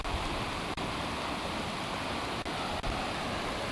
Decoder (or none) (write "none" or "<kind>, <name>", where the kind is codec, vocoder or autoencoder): none